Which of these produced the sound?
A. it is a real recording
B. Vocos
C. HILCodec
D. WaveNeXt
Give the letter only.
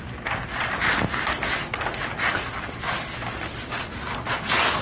A